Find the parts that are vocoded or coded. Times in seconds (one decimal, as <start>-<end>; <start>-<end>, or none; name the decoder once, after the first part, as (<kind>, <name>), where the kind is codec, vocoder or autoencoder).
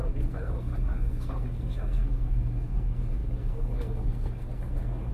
0.0-5.1 (codec, SNAC)